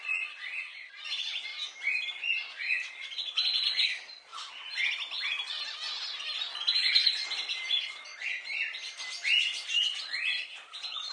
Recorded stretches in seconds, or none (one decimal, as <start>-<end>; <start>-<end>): 1.5-2.6; 4.3-6.6; 8.1-9.8